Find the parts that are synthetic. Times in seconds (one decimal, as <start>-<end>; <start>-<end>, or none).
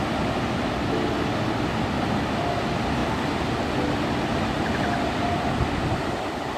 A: none